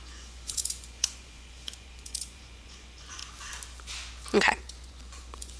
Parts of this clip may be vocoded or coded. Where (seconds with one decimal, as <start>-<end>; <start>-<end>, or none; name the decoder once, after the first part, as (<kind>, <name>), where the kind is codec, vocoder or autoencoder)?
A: 0.0-3.2 (vocoder, Vocos); 4.5-5.6